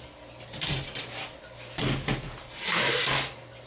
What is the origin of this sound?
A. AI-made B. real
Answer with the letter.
B